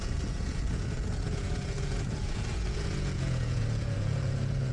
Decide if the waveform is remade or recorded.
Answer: remade